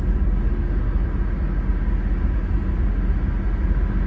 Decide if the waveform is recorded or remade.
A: recorded